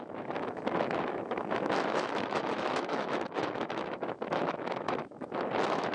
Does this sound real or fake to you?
fake